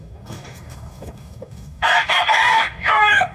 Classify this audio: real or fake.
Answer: fake